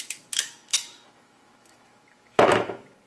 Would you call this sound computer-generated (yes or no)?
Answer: yes